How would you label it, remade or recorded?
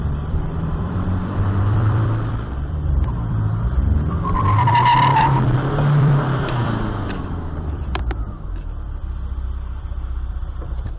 remade